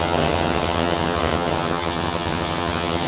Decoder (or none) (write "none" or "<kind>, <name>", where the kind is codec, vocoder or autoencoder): vocoder, HiFi-GAN